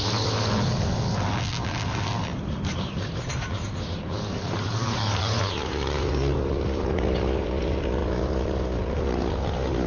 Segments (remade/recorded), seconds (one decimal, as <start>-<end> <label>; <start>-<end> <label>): 0.0-2.3 recorded; 2.3-6.8 remade; 6.8-9.9 recorded